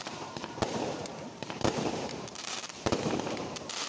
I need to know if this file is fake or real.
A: fake